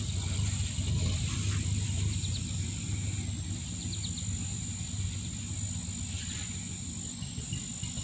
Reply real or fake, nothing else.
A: real